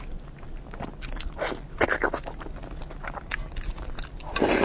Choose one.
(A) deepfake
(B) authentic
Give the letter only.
B